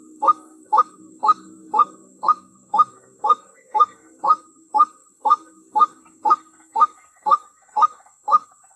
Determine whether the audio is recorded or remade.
remade